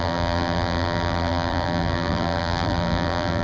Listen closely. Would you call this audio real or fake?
fake